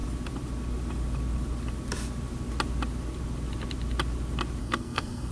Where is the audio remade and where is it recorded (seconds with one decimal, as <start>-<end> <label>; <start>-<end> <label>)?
0.0-4.6 recorded; 4.6-5.3 remade

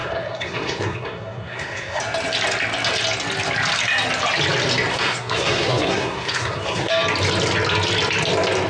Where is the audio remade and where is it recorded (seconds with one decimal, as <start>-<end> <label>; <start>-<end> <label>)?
0.0-2.0 remade; 2.0-4.9 recorded; 4.9-6.9 remade; 6.9-8.7 recorded

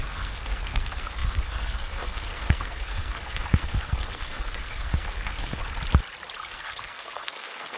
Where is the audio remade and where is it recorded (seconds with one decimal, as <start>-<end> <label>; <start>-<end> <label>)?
0.0-5.6 remade; 5.6-6.5 recorded; 6.5-7.8 remade

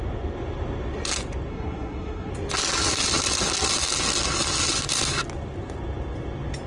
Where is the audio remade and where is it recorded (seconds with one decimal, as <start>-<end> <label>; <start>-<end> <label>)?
0.0-1.5 recorded; 1.5-2.3 remade; 2.3-6.7 recorded

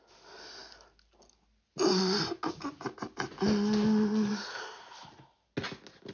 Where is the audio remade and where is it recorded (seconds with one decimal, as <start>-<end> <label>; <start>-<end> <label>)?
0.0-6.1 recorded

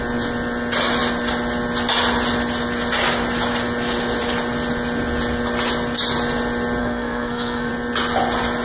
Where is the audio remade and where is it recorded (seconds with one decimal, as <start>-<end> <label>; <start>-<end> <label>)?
0.0-6.8 recorded; 6.8-7.7 remade; 7.7-8.6 recorded

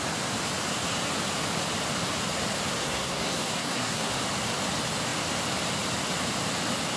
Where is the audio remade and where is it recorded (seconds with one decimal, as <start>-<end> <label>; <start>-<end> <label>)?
0.0-2.8 recorded; 2.8-4.1 remade; 4.1-7.0 recorded

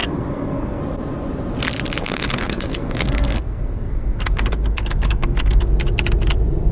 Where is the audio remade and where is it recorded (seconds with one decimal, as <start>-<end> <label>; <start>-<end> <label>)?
0.0-0.8 remade; 0.8-2.0 recorded; 2.0-5.6 remade; 5.6-6.7 recorded